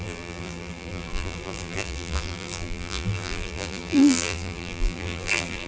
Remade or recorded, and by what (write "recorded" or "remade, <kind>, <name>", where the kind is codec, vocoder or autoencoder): remade, vocoder, BigVGAN v2